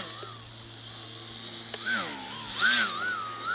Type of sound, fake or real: real